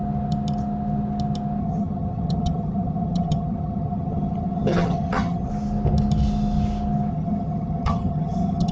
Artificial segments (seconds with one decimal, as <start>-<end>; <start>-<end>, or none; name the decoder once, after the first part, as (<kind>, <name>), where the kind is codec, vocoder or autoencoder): 1.6-5.5 (vocoder, HiFi-GAN); 7.1-8.7